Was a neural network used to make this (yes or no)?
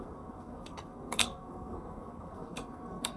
yes